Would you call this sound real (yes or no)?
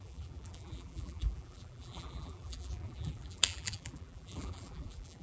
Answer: no